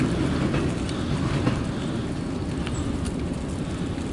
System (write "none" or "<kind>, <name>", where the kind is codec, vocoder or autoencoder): none